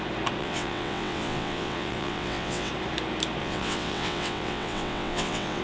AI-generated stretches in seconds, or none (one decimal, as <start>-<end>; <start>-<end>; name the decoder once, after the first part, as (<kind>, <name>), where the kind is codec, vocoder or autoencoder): 0.4-2.7 (vocoder, WaveNeXt); 3.4-5.6